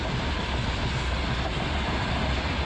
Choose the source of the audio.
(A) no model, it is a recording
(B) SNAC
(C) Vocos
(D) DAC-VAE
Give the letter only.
A